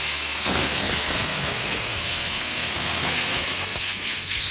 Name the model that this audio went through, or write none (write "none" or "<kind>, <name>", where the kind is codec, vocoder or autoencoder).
codec, SNAC